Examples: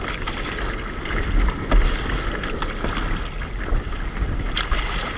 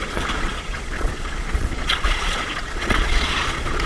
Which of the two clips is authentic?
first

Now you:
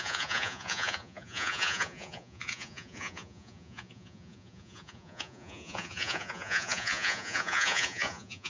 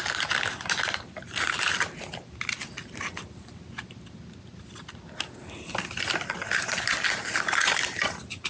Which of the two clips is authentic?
second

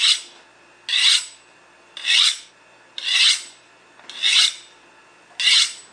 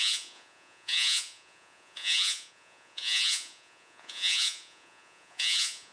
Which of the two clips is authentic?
first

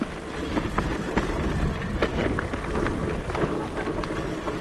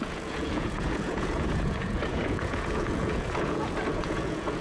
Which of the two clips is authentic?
first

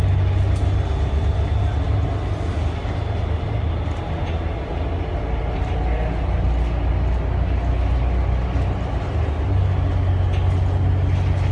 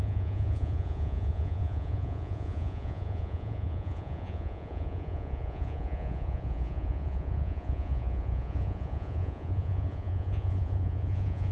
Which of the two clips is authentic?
first